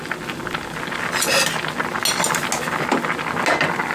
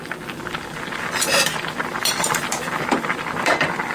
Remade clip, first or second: second